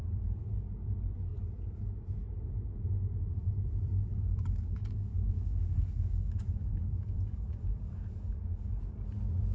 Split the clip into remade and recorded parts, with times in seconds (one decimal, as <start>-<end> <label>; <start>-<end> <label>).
0.0-4.1 recorded; 4.1-8.8 remade; 8.8-9.5 recorded